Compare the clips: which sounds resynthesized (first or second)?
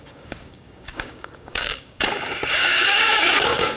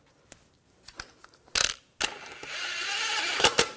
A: first